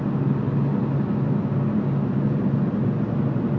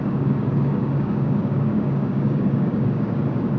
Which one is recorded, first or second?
first